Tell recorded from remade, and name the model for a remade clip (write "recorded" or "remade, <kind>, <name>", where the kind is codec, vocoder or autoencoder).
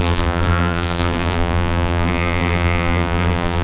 remade, vocoder, BigVGAN v2